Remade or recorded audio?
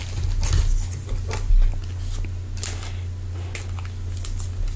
recorded